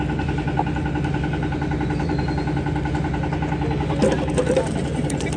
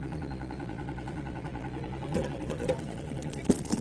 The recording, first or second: first